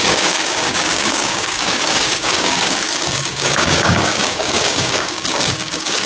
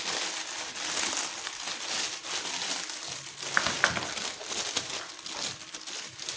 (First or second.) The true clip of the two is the second